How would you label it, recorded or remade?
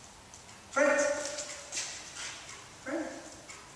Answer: recorded